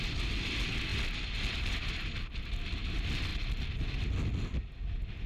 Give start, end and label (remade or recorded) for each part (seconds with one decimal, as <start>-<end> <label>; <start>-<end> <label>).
0.0-5.3 recorded